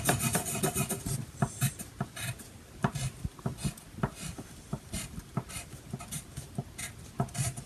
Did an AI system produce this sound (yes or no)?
no